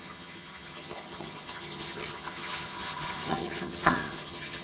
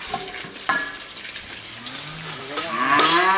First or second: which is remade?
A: first